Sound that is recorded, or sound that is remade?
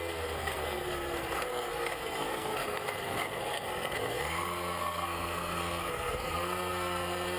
remade